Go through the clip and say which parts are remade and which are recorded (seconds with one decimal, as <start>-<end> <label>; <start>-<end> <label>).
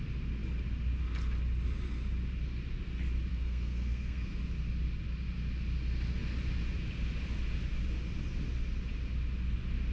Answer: 0.0-3.3 recorded; 3.3-4.3 remade; 4.3-9.9 recorded